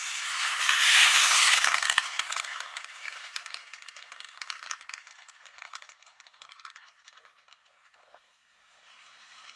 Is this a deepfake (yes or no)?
yes